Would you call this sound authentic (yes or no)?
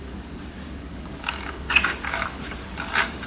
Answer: no